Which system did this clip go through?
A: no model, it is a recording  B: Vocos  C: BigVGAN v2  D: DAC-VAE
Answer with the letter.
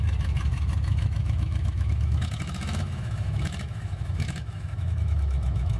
D